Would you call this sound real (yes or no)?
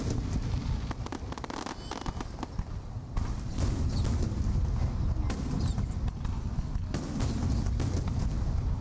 yes